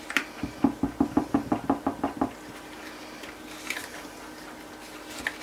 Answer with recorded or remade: recorded